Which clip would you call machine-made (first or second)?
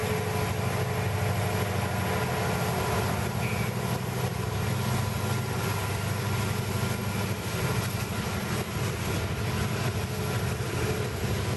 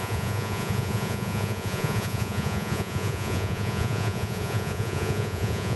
second